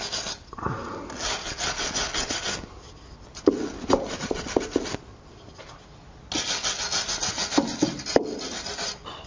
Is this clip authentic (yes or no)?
yes